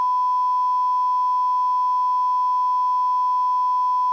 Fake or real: real